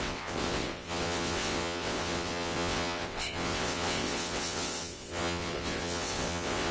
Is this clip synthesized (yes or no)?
yes